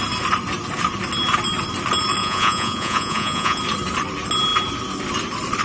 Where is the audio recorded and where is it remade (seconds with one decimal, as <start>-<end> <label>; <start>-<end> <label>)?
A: 0.0-2.2 recorded; 2.2-3.6 remade; 3.6-5.6 recorded